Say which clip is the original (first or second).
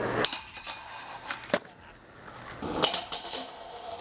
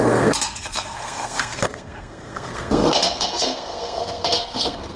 first